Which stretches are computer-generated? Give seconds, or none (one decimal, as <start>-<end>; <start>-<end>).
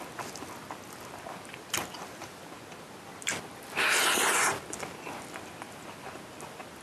none